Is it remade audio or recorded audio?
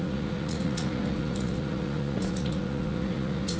remade